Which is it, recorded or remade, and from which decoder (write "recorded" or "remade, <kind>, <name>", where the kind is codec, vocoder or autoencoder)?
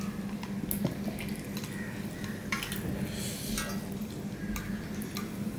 recorded